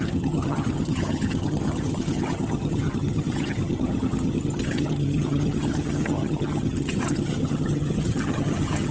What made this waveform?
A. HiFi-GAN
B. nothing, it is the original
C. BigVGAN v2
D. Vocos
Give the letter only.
A